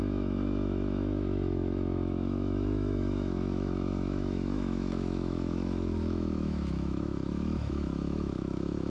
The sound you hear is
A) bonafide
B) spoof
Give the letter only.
B